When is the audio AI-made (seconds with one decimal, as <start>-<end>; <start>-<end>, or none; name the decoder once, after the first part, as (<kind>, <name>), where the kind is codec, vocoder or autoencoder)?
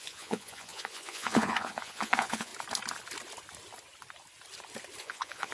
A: 0.0-2.5 (vocoder, Vocos); 5.0-5.5